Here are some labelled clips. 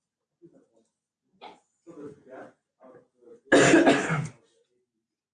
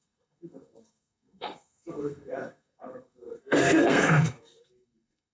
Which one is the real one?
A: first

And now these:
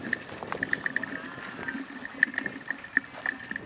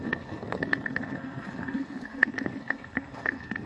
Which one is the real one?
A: first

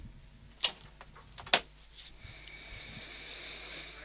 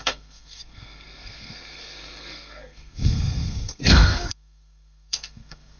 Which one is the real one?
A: first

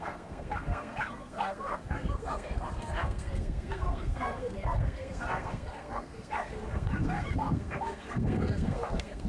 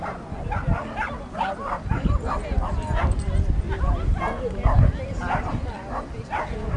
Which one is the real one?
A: second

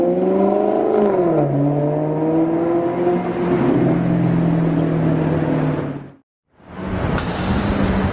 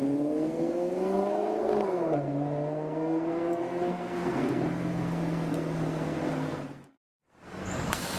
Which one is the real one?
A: first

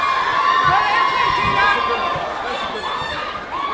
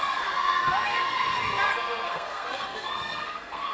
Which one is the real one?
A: first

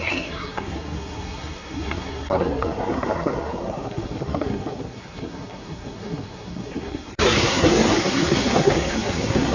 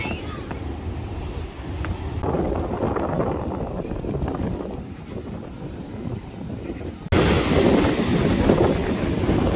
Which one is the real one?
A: second